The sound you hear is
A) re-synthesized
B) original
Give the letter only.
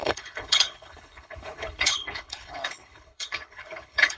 A